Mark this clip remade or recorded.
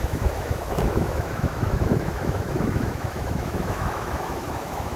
remade